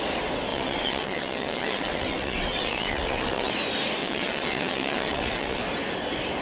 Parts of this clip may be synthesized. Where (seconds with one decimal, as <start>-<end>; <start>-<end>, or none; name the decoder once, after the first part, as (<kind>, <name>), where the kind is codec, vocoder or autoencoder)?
0.5-3.5 (vocoder, WaveNeXt); 4.0-5.6